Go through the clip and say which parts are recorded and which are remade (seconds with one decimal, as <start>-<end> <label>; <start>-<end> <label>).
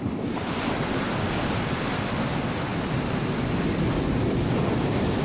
0.0-5.2 recorded